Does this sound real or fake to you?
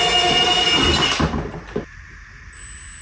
real